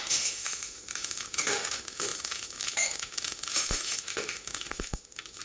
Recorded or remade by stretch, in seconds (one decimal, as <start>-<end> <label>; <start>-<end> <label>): 0.0-5.4 remade